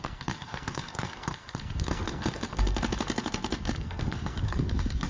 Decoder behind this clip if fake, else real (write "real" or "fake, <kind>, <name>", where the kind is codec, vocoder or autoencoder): fake, codec, SNAC